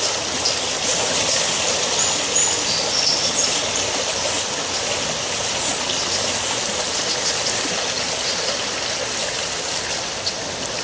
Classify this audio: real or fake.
real